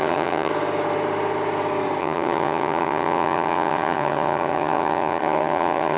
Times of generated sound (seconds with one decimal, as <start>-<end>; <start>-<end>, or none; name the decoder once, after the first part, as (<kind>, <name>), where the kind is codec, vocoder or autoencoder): 0.0-0.5 (vocoder, HiFi-GAN); 2.0-6.0